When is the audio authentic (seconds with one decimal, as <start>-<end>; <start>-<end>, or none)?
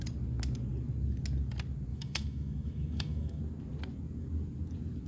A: 0.0-1.9; 3.4-5.1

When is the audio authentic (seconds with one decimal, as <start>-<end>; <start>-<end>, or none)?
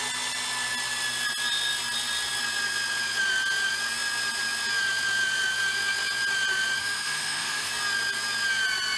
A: 0.0-6.8; 7.7-9.0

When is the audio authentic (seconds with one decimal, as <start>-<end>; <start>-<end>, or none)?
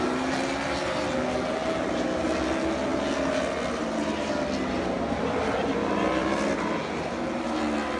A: 0.0-8.0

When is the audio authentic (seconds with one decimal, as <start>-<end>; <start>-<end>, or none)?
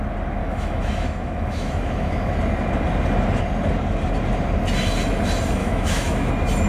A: 0.0-0.4; 2.3-5.6; 6.3-6.7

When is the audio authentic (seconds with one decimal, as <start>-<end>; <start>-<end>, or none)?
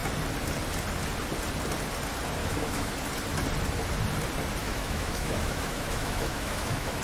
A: 0.0-2.4; 2.9-4.6